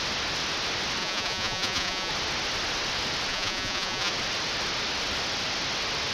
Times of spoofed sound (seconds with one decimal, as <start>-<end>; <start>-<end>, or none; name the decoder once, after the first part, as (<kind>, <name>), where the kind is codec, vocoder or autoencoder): 1.0-2.1 (vocoder, Vocos); 3.3-4.1